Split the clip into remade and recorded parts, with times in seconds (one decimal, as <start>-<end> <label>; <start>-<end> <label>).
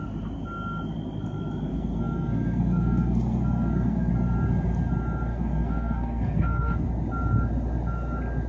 0.0-1.7 recorded; 1.7-4.1 remade; 4.1-5.3 recorded; 5.3-6.9 remade; 6.9-8.5 recorded